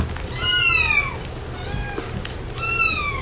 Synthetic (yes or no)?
no